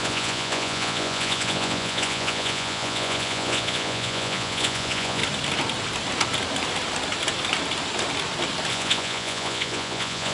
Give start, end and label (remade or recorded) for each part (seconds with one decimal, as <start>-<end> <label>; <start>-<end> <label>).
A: 0.0-5.2 remade; 5.2-8.7 recorded; 8.7-10.3 remade